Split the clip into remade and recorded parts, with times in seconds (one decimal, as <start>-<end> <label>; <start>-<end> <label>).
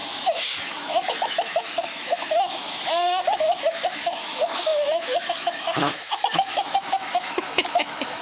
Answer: 0.0-8.2 remade